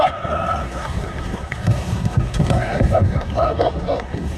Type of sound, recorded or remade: remade